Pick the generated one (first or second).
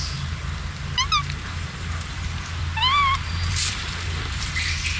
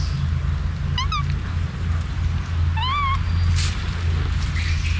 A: first